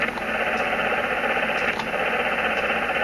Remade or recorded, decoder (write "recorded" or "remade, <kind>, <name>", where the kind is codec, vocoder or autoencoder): recorded